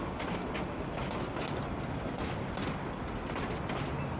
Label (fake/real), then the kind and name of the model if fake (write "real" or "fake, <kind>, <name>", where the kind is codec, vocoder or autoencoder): real